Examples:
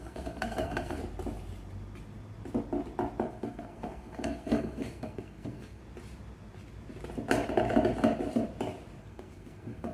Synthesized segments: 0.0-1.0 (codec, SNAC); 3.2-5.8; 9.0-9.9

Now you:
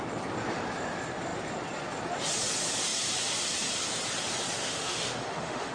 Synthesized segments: 4.6-5.7 (autoencoder, DAC-VAE)

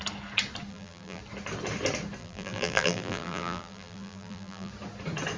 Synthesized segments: 0.7-1.2 (vocoder, BigVGAN v2); 2.2-4.7